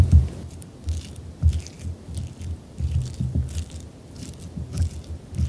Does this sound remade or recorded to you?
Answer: recorded